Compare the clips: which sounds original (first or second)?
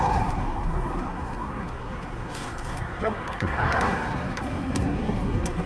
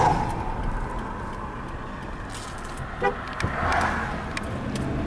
second